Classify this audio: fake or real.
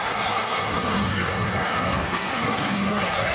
fake